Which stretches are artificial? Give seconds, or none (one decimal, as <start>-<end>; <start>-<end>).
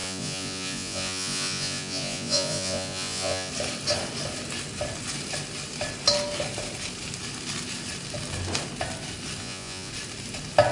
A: 0.0-3.5; 9.4-9.9